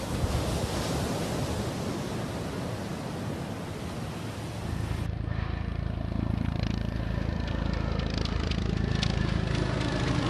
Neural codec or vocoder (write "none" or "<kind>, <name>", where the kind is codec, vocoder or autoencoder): none